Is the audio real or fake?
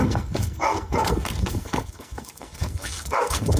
fake